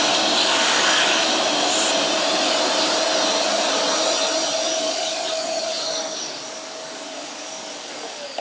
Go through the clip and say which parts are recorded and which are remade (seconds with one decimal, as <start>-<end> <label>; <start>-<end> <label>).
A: 0.0-0.4 recorded; 0.4-1.2 remade; 1.2-4.7 recorded; 4.7-8.4 remade